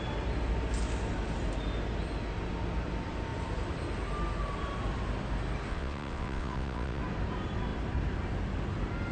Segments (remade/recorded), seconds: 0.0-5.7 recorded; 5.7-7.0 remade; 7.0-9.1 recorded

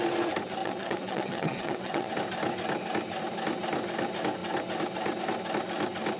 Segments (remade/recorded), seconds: 0.0-0.6 recorded; 0.6-2.1 remade; 2.1-6.2 recorded

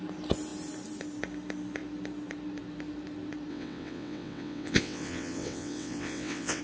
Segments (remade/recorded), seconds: 0.0-3.5 recorded; 3.5-6.6 remade

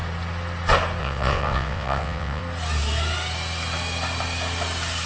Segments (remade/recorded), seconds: 0.0-1.0 recorded; 1.0-2.4 remade; 2.4-5.1 recorded

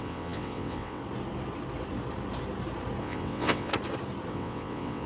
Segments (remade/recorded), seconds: 0.0-1.0 remade; 1.0-3.0 recorded; 3.0-3.7 remade; 3.7-4.3 recorded; 4.3-5.1 remade

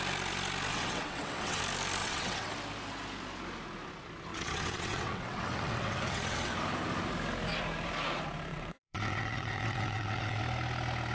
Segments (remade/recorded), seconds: 0.0-0.7 recorded; 0.7-1.6 remade; 1.6-2.0 recorded; 2.0-2.5 remade; 2.5-4.3 recorded; 4.3-6.6 remade; 6.6-8.5 recorded; 8.5-10.4 remade; 10.4-11.1 recorded